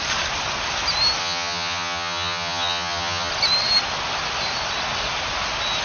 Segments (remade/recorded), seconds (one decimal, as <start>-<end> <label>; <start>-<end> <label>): 0.0-1.2 recorded; 1.2-3.3 remade; 3.3-5.8 recorded